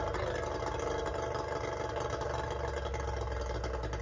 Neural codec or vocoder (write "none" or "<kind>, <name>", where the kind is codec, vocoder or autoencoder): none